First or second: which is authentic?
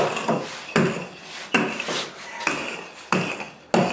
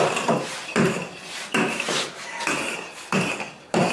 first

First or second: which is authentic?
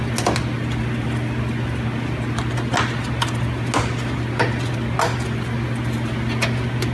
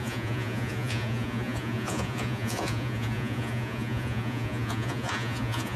first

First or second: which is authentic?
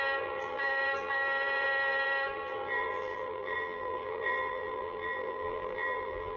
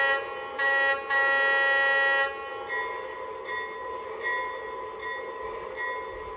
second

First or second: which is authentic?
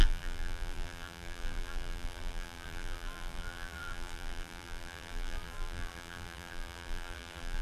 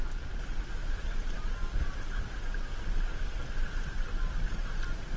second